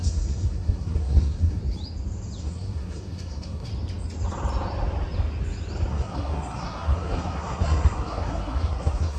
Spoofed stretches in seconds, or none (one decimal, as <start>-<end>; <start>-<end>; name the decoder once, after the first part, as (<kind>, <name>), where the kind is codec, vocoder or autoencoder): 0.0-1.6 (codec, SNAC); 2.4-3.7; 5.9-9.2